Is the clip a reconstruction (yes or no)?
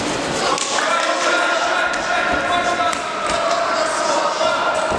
no